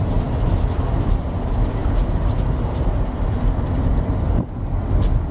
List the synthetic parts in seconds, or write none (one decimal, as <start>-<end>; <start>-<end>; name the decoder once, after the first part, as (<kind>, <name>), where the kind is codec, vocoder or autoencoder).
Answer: none